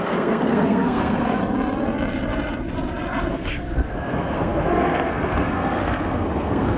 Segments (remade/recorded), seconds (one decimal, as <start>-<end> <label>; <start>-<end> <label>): 0.0-1.4 remade; 1.4-3.3 recorded; 3.3-6.8 remade